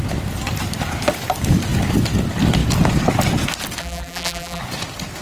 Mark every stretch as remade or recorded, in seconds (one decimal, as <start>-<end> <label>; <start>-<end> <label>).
0.0-3.8 recorded; 3.8-4.6 remade; 4.6-5.2 recorded